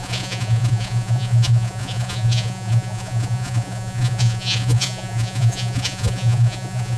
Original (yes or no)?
no